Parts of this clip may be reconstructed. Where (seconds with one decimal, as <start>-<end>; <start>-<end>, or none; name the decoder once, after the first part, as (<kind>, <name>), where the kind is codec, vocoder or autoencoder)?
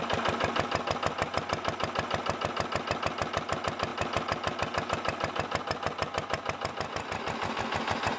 none